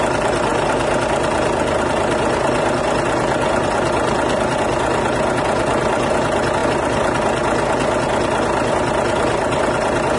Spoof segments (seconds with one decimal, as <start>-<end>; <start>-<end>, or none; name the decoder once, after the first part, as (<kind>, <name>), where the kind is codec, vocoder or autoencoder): none